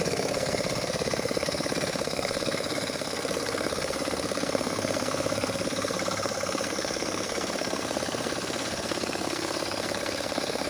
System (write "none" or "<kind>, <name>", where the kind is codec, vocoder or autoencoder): codec, SNAC